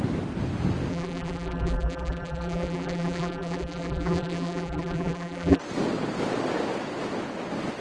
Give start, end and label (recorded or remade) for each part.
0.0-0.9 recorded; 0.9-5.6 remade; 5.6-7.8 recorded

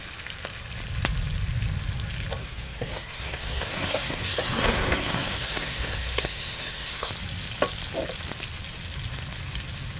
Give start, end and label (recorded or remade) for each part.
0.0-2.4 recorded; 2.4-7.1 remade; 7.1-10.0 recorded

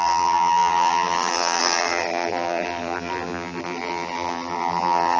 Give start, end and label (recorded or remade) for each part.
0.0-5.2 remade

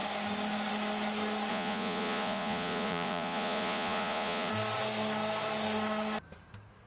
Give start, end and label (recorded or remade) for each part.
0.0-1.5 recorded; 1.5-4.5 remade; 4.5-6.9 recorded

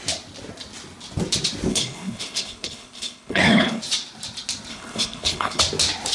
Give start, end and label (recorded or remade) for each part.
0.0-1.7 recorded; 1.7-3.8 remade; 3.8-4.7 recorded; 4.7-5.6 remade; 5.6-6.1 recorded

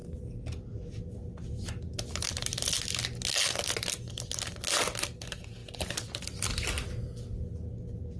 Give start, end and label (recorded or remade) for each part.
0.0-2.3 remade; 2.3-8.2 recorded

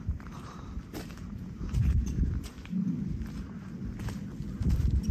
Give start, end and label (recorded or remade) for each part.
0.0-3.0 remade; 3.0-4.5 recorded; 4.5-5.1 remade

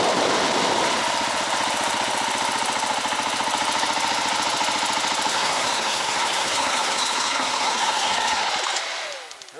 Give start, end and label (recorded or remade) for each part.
0.0-5.3 recorded; 5.3-8.5 remade; 8.5-9.6 recorded